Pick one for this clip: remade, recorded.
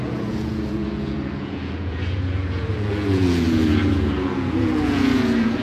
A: remade